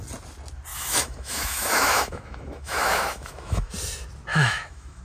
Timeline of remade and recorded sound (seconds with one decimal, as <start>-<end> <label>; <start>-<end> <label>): 0.0-0.7 recorded; 0.7-3.7 remade; 3.7-4.3 recorded; 4.3-5.0 remade

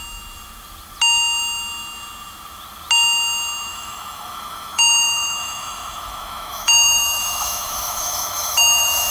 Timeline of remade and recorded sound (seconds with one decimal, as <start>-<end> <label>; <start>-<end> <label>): 0.0-3.7 recorded; 3.7-9.1 remade

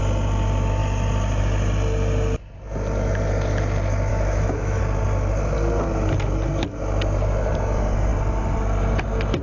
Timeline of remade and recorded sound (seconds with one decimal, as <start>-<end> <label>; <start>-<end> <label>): 0.0-4.1 recorded; 4.1-4.8 remade; 4.8-9.4 recorded

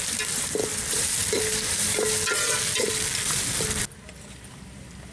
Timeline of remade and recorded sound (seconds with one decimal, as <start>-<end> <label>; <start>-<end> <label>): 0.0-5.1 recorded